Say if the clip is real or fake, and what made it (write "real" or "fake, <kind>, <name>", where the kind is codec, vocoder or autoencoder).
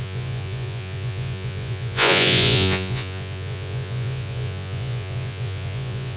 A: fake, vocoder, Vocos